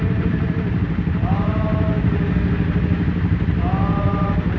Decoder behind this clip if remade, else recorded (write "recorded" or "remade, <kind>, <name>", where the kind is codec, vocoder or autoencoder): remade, vocoder, BigVGAN v2